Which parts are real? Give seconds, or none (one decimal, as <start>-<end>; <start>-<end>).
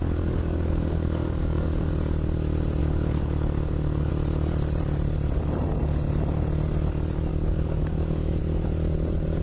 1.9-2.8; 4.1-7.3; 8.4-9.4